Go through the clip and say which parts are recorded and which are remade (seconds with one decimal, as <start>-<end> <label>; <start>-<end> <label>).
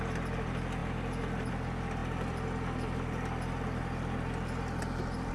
0.0-5.3 recorded